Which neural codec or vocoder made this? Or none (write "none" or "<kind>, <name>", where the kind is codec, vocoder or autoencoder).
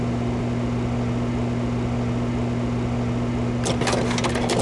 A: none